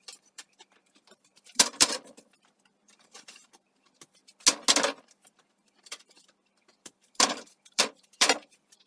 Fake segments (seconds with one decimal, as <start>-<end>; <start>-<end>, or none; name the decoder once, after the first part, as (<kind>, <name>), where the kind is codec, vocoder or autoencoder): 0.0-4.2 (vocoder, BigVGAN v2); 5.0-8.9